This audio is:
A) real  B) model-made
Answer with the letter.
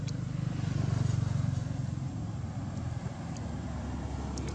A